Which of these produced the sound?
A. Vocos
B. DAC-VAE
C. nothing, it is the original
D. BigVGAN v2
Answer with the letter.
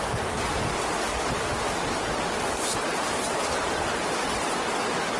C